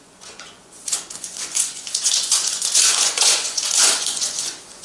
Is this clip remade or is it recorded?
remade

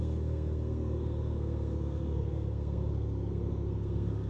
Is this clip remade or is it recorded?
remade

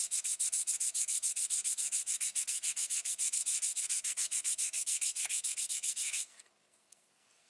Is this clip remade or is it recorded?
remade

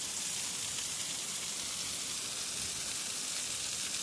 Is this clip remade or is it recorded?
recorded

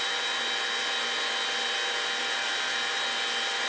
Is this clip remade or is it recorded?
recorded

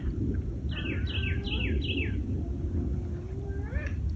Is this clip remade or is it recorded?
recorded